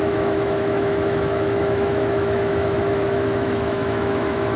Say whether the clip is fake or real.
fake